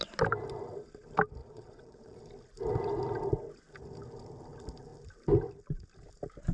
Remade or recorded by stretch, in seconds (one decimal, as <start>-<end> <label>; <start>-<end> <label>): 0.0-1.4 recorded; 1.4-2.2 remade; 2.2-6.5 recorded